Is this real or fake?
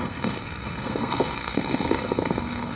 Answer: fake